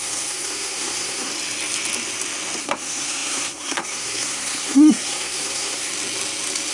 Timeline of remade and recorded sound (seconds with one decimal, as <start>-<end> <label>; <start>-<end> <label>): 0.0-1.3 remade; 1.3-2.6 recorded; 2.6-5.9 remade; 5.9-6.7 recorded